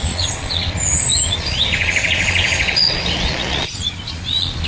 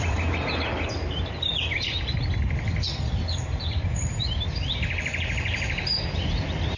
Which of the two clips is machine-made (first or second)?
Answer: first